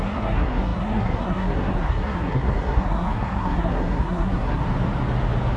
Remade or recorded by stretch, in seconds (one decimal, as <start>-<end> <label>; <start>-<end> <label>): 0.0-4.6 remade; 4.6-5.6 recorded